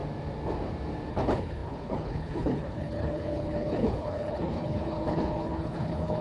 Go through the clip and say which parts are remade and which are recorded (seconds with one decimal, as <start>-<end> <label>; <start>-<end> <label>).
0.0-1.1 recorded; 1.1-6.2 remade